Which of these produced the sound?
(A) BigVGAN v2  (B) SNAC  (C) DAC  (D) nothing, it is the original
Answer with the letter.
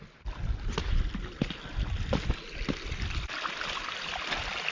D